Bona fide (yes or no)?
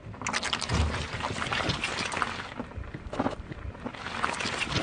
yes